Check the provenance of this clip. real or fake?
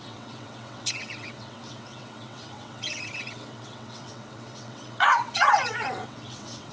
fake